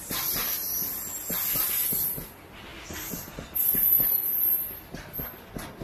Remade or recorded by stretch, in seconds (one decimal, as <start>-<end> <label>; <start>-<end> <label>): 0.0-5.8 recorded